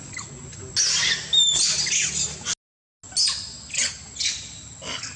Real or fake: real